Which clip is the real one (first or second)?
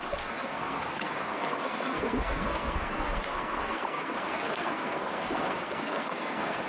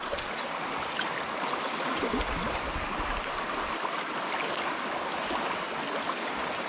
second